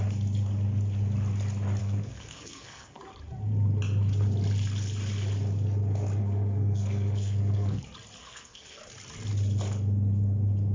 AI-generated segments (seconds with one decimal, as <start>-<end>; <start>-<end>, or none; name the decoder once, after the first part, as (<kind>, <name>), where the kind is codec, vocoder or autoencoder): 1.8-3.0 (codec, SNAC); 6.2-7.8; 8.2-8.8